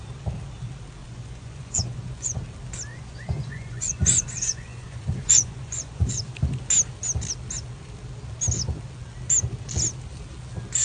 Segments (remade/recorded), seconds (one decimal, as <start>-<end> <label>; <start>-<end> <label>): 0.0-1.0 recorded; 1.0-2.4 remade; 2.4-2.9 recorded; 2.9-6.1 remade; 6.1-10.8 recorded